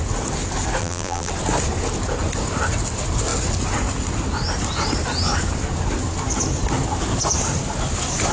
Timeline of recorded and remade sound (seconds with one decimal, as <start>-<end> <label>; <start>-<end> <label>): 0.0-0.8 recorded; 0.8-1.3 remade; 1.3-8.3 recorded